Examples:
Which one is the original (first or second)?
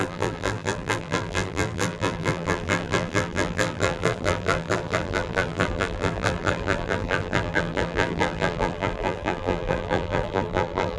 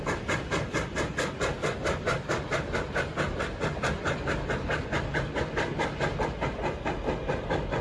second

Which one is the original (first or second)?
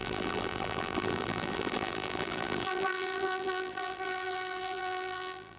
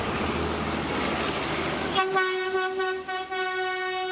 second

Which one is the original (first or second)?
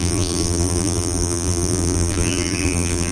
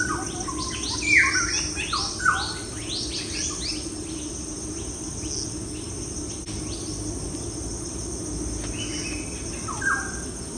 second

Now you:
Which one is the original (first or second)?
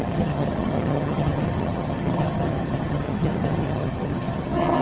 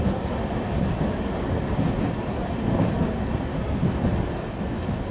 second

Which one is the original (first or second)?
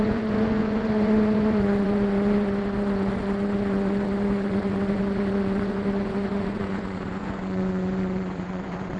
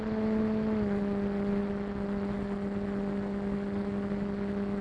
second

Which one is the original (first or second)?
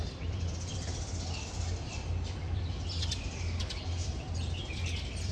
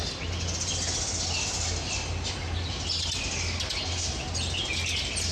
second